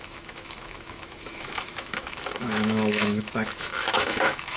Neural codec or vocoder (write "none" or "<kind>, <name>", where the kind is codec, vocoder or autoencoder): autoencoder, DAC-VAE